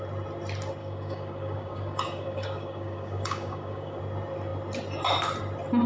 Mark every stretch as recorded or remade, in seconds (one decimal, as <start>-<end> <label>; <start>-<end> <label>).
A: 0.0-0.8 recorded; 0.8-4.0 remade; 4.0-5.9 recorded